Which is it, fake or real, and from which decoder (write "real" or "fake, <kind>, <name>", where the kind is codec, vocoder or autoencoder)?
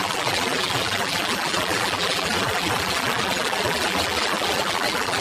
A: fake, vocoder, BigVGAN v2